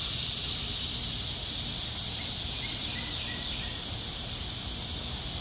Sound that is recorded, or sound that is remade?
recorded